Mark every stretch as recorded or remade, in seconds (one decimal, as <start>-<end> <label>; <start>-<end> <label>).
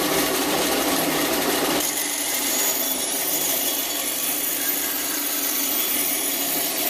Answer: 0.0-3.7 remade; 3.7-4.9 recorded; 4.9-6.9 remade